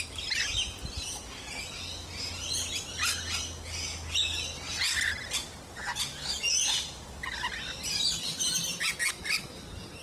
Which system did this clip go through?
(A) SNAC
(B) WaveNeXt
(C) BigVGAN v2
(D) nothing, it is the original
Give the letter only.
D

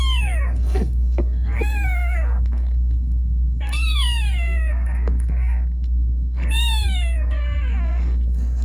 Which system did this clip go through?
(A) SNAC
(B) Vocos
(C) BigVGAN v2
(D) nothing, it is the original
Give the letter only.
A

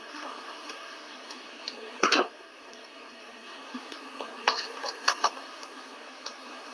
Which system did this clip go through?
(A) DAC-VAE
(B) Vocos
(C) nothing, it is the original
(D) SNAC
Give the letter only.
D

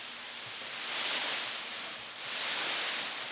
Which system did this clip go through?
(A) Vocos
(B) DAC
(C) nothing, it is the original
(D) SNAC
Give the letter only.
C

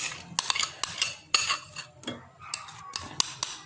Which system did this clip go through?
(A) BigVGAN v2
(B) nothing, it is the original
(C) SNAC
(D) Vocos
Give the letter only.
B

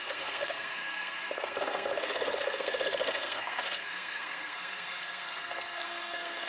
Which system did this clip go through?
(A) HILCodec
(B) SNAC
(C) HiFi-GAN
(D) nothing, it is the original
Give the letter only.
B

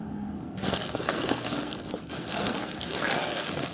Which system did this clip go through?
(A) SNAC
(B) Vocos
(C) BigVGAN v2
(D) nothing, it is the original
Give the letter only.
A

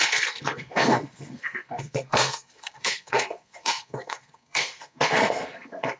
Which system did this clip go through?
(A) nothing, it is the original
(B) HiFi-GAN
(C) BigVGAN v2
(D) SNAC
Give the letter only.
D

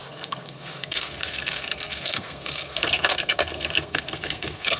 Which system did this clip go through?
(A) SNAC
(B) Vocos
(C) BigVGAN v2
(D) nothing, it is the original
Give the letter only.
A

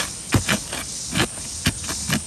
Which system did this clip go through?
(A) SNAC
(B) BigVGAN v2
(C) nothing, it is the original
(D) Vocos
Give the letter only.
C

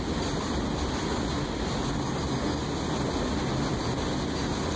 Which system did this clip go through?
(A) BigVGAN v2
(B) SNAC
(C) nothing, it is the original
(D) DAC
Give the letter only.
C